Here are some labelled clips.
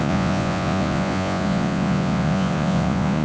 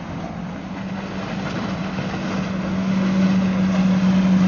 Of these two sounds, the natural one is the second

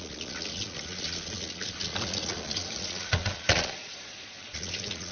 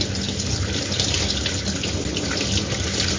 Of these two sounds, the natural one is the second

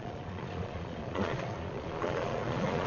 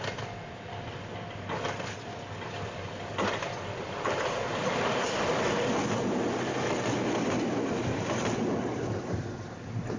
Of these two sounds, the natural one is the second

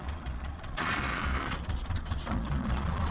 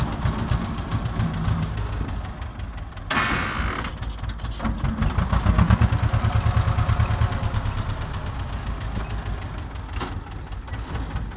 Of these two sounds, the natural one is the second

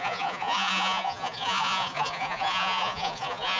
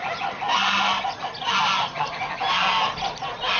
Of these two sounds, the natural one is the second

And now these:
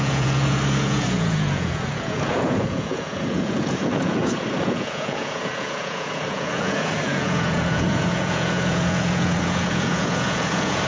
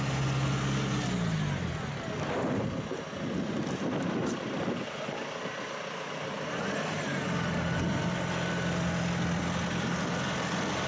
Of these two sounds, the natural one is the second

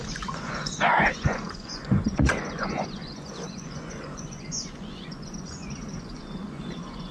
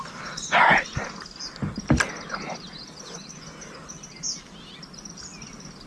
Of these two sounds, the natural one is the second